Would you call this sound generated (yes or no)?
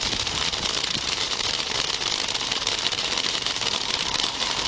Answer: yes